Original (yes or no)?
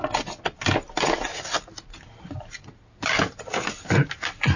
yes